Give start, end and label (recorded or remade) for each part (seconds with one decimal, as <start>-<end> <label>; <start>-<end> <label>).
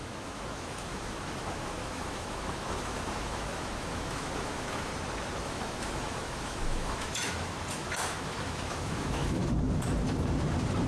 0.0-4.9 remade; 4.9-5.4 recorded; 5.4-9.4 remade; 9.4-10.9 recorded